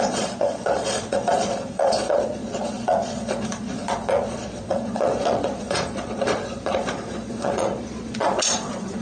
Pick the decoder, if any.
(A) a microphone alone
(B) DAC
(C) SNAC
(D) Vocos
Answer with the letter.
D